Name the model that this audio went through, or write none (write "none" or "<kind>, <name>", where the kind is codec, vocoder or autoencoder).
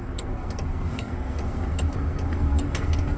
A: codec, SNAC